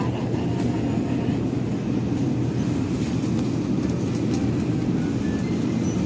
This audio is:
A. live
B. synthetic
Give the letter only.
A